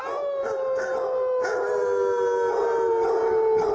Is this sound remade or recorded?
recorded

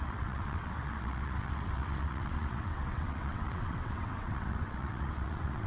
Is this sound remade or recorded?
remade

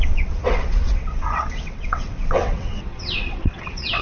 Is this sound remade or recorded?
remade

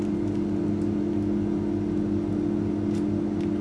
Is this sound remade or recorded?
recorded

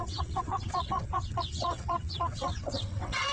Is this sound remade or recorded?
remade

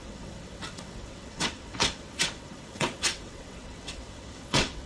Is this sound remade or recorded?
remade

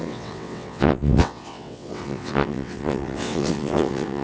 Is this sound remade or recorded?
remade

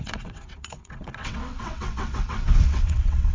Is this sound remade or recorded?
remade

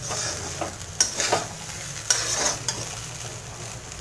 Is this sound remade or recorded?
recorded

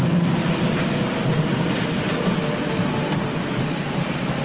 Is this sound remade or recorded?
recorded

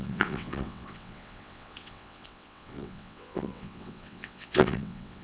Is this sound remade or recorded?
remade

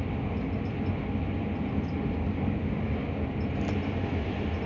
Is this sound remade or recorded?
recorded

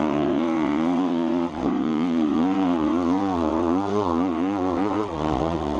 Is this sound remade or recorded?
remade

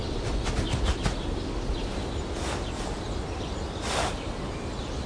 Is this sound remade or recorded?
recorded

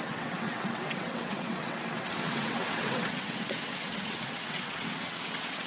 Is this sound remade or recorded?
remade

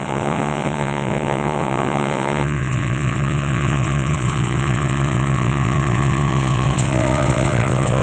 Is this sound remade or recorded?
remade